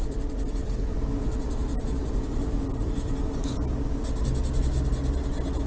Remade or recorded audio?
recorded